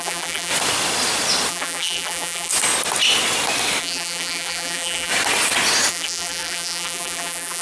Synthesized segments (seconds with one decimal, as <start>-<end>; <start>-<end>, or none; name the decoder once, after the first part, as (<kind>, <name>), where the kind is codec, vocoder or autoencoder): 0.0-0.5 (vocoder, BigVGAN v2); 1.5-2.5; 3.8-5.1; 5.9-7.6